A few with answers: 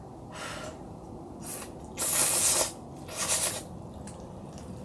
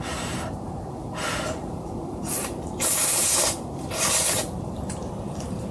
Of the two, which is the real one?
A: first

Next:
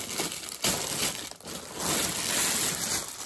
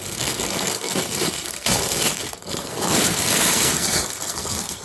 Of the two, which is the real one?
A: first